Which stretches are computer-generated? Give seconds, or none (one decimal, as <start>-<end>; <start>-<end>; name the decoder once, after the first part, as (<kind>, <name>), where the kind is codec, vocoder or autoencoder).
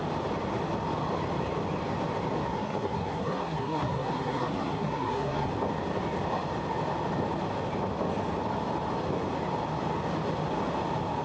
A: 2.5-5.5 (codec, SNAC)